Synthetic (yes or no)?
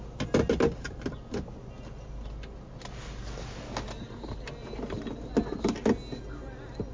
no